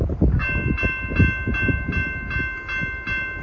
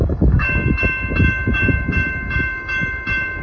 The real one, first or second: first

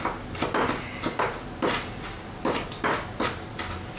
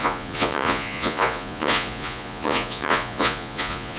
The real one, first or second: first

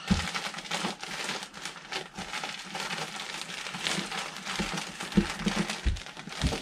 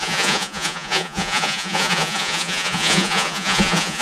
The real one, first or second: first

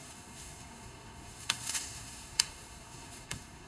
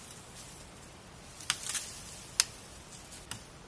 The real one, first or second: second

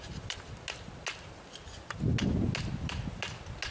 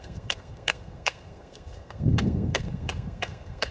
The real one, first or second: first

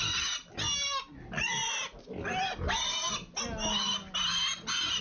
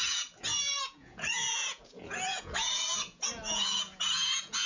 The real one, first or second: first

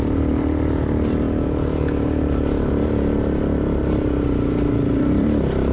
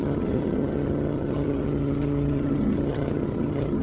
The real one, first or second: first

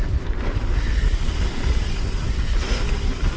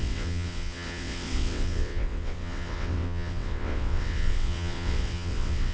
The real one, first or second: first